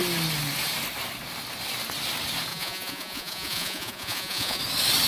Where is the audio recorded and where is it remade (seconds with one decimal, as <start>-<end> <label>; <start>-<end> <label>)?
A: 0.0-2.5 recorded; 2.5-4.6 remade; 4.6-5.1 recorded